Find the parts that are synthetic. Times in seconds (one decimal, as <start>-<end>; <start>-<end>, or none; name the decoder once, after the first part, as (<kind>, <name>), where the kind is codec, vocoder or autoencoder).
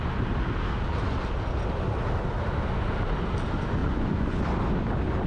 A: 3.8-4.4 (vocoder, Vocos)